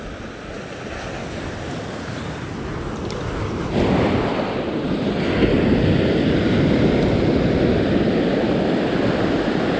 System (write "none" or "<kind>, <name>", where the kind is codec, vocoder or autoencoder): none